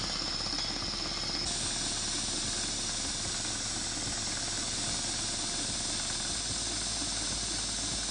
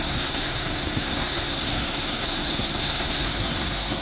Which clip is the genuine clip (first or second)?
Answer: first